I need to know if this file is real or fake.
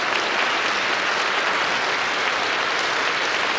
real